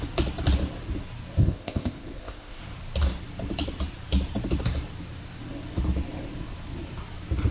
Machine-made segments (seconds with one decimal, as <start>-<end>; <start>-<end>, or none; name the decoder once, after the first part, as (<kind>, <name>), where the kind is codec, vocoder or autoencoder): 1.4-2.6 (codec, ZipCodec)